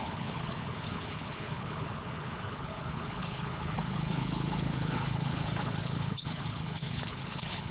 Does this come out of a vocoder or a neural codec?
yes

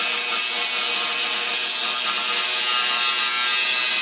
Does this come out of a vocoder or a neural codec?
no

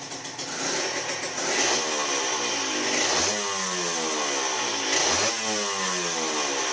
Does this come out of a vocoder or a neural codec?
no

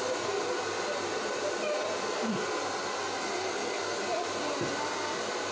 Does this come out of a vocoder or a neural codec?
no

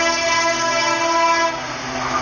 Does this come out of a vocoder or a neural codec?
no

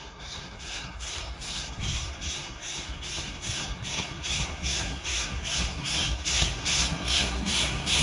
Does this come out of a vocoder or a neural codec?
yes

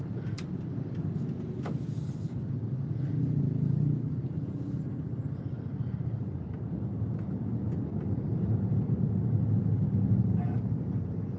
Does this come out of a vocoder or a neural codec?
no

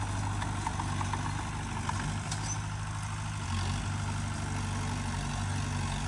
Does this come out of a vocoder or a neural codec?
no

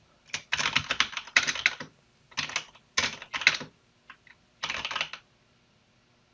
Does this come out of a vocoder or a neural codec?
no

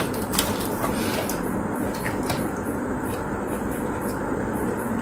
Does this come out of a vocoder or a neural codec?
yes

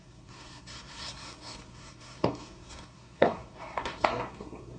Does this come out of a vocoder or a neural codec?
yes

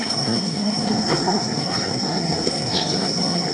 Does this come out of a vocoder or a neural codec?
yes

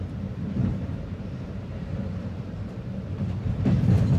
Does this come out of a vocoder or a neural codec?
yes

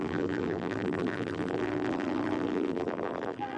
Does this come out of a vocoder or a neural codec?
yes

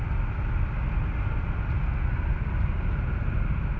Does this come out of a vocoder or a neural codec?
no